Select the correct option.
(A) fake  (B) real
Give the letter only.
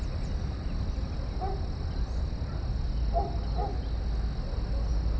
B